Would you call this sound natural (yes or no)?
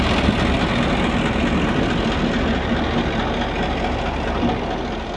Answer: yes